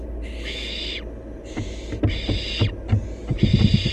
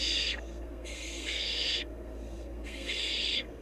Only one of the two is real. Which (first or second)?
first